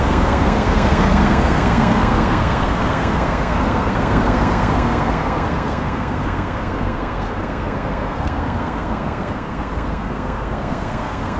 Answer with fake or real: fake